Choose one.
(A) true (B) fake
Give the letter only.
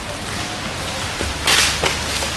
A